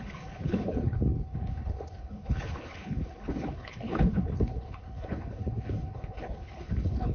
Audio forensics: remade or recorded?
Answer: remade